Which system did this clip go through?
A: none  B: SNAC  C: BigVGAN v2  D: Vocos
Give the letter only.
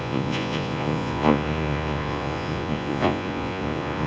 D